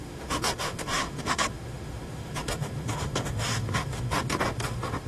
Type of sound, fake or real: fake